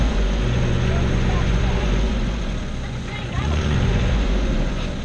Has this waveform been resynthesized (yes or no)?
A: yes